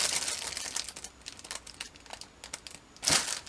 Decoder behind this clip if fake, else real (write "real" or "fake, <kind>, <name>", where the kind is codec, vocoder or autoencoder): real